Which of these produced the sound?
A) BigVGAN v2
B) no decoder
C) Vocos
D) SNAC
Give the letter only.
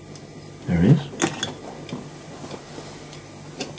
B